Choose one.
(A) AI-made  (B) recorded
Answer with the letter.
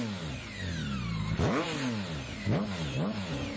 B